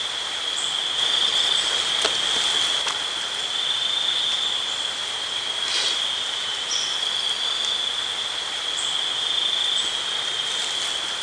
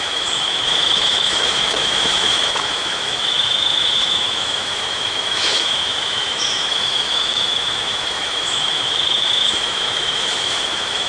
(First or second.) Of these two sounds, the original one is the first